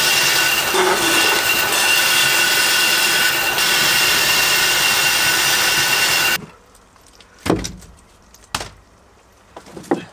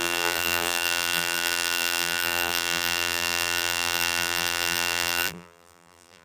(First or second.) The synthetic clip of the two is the second